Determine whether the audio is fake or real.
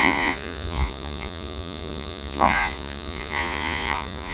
fake